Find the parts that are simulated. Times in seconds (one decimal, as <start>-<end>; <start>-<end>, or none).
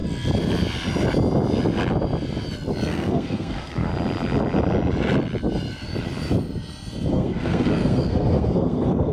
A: 2.9-3.9; 7.1-9.1